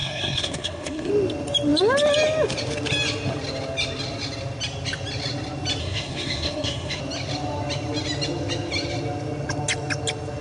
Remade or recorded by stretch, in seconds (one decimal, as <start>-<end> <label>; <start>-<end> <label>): 0.0-1.1 remade; 1.1-5.8 recorded; 5.8-7.0 remade; 7.0-10.4 recorded